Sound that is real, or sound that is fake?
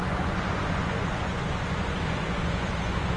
fake